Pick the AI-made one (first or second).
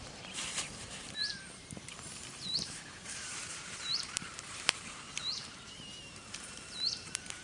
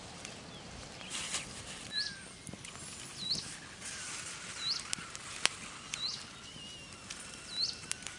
first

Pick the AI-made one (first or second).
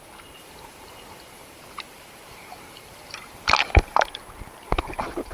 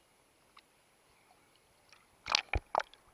first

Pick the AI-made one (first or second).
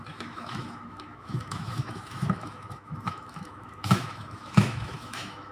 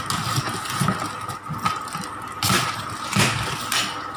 first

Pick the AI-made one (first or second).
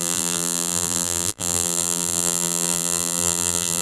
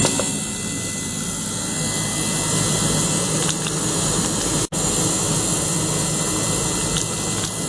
first